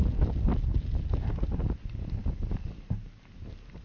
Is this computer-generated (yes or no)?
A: no